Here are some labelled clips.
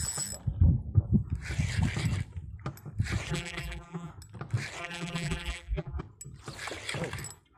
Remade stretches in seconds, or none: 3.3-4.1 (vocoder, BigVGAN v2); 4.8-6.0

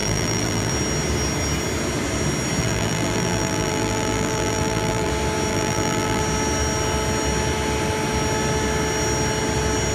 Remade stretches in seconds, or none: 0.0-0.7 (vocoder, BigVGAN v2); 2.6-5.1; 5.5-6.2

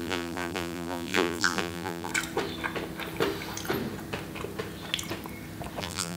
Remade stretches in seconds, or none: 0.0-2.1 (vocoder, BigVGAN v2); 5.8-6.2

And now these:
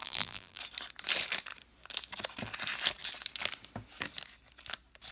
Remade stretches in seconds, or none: 0.0-0.6 (vocoder, BigVGAN v2)

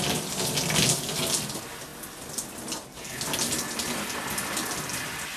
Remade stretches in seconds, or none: none